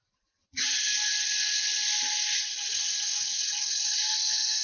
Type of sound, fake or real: real